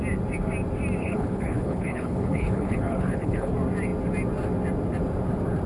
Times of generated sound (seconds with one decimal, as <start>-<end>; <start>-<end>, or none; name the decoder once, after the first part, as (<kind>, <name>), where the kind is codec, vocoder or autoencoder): 1.0-3.5 (codec, HILCodec)